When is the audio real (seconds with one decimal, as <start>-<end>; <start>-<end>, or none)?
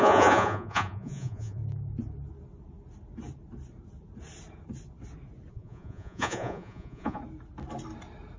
1.6-5.5; 7.2-8.4